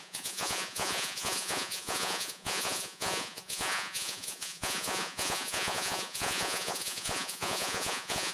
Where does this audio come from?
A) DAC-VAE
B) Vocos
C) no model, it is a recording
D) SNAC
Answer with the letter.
B